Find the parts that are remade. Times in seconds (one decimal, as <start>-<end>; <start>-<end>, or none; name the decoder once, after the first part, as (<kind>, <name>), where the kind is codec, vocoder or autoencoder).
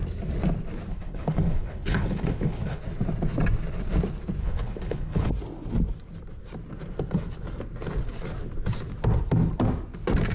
0.9-2.8 (codec, HILCodec); 4.4-5.3